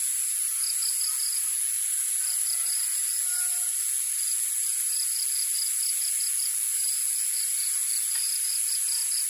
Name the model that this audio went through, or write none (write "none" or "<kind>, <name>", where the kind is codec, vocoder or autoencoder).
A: none